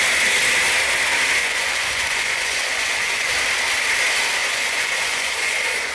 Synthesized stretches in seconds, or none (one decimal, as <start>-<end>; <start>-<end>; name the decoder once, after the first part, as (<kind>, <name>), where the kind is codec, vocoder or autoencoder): 1.4-3.3 (vocoder, Vocos); 4.4-5.9